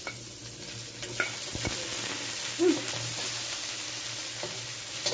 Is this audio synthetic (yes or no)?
no